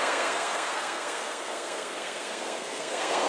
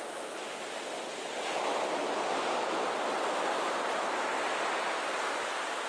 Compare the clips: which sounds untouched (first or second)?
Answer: second